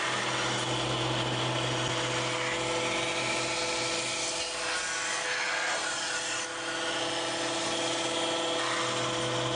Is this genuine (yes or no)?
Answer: yes